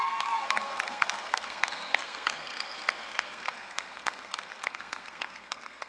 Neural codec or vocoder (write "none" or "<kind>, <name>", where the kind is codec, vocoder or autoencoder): codec, SNAC